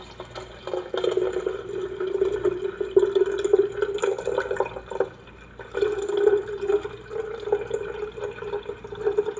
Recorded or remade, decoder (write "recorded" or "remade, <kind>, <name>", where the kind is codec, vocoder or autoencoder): recorded